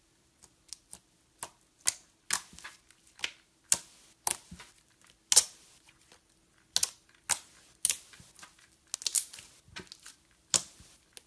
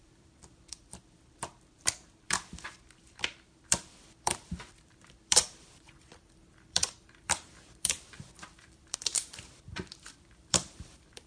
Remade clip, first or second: second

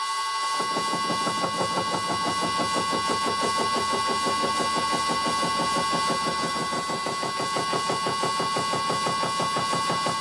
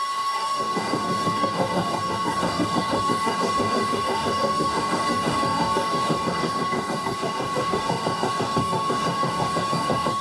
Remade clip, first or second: second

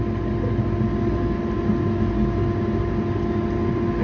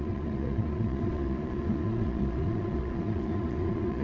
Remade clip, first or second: second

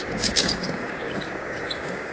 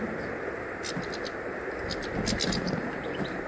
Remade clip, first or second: first